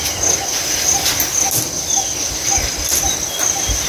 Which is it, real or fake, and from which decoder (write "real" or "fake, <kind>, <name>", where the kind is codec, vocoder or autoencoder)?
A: real